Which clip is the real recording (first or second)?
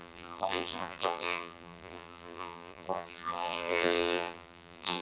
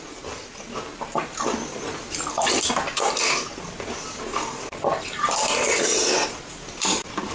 second